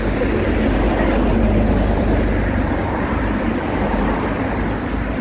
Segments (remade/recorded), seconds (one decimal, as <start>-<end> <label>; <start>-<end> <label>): 0.0-1.3 recorded; 1.3-4.4 remade; 4.4-5.2 recorded